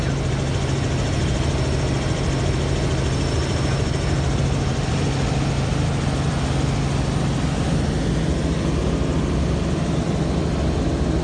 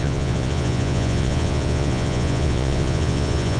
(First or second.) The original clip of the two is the first